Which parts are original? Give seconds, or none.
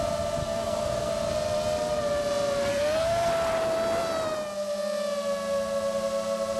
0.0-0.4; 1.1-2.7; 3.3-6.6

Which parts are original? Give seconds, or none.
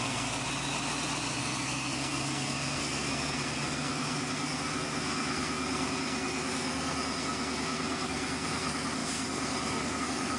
0.4-1.4